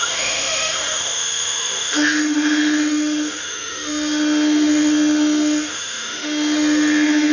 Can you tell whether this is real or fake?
fake